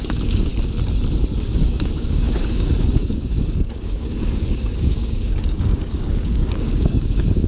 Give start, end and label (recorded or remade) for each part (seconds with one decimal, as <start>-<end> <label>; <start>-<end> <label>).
0.0-0.5 remade; 0.5-1.4 recorded; 1.4-7.5 remade